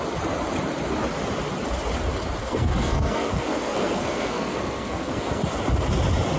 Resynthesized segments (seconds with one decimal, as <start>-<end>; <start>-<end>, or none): 2.4-5.4

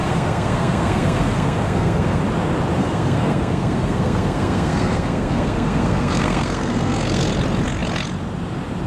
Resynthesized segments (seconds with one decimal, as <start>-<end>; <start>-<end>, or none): 0.0-2.2; 2.8-7.3

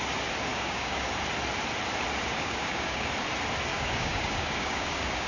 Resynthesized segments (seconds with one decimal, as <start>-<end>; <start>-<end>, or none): 0.5-1.1; 2.3-3.1; 3.7-5.3

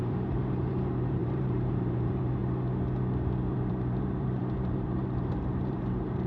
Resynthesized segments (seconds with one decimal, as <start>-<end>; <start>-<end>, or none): 0.0-2.4; 3.5-6.3

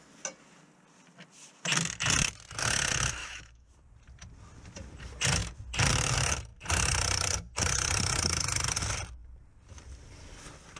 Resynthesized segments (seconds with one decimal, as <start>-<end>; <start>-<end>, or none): 3.2-3.7

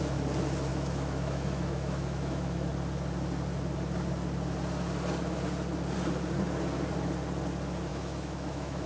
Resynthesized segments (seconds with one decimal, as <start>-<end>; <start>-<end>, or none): 0.7-2.7; 7.9-8.9